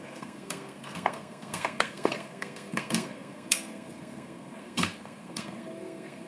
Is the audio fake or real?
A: fake